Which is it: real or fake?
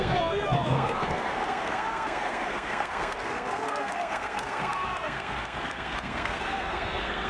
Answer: fake